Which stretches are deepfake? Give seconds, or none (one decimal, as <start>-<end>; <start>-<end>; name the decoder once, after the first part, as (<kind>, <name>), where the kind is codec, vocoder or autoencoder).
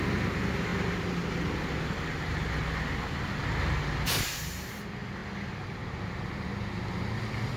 none